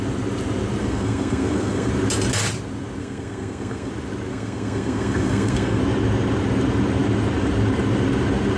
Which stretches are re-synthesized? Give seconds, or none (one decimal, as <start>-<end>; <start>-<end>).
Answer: 0.8-1.9; 3.0-3.9; 4.3-5.8

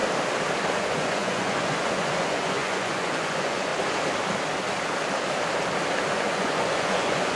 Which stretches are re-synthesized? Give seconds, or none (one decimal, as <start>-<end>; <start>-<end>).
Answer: 0.7-3.7; 6.1-7.4

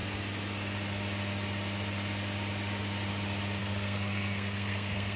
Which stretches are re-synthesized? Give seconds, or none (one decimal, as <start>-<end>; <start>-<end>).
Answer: 3.6-5.2

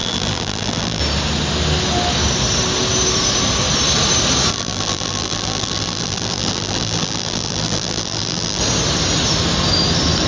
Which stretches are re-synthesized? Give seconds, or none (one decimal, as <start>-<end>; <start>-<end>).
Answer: 0.0-1.0; 4.5-8.6

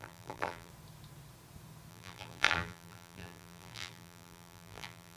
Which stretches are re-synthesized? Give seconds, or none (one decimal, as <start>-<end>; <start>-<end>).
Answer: 0.0-0.7; 1.9-5.2